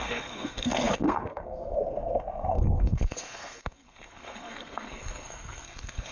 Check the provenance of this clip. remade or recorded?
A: remade